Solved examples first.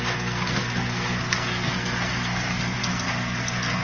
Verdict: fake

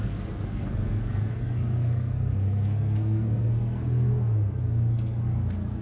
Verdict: fake